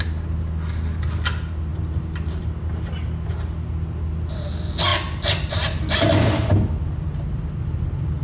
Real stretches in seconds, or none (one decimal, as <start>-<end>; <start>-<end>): 0.0-8.2